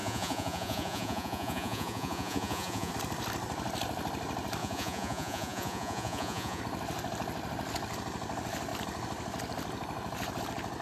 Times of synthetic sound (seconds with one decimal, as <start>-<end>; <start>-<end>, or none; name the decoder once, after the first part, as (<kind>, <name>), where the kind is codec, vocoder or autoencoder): 0.0-2.9 (vocoder, Vocos); 4.6-6.6